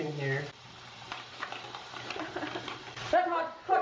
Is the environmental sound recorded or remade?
remade